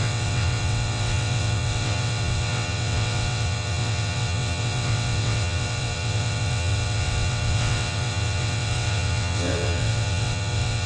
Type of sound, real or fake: fake